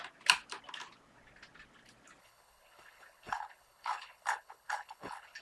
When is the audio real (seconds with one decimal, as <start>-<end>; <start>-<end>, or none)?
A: 0.0-2.2